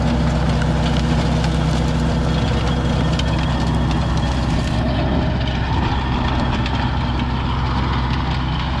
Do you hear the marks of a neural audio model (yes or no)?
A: no